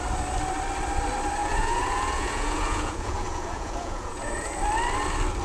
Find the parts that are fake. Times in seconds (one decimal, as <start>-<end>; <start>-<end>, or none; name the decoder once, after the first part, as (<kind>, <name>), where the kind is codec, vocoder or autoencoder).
1.4-4.6 (vocoder, Vocos)